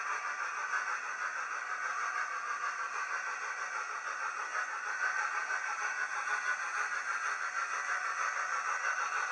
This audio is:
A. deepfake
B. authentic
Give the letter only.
B